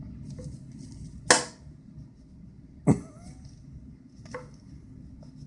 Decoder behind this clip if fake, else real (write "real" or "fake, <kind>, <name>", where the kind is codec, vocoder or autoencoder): real